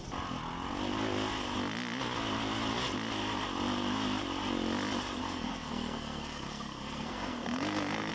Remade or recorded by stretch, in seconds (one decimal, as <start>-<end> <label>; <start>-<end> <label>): 0.0-5.2 recorded; 5.2-8.1 remade